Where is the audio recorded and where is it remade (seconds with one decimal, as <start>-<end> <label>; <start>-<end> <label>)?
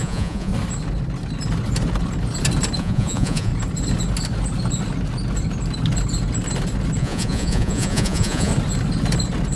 0.0-0.5 remade; 0.5-2.8 recorded; 2.8-3.5 remade; 3.5-7.0 recorded; 7.0-8.5 remade; 8.5-9.6 recorded